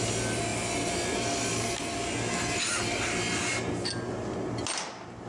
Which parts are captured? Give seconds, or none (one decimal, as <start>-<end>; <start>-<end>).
0.0-5.3